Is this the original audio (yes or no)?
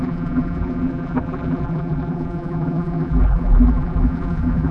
no